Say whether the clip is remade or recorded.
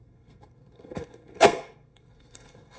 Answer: remade